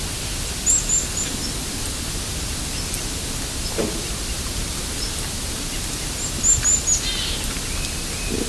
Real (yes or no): yes